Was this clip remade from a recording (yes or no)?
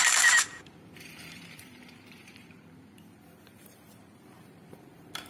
yes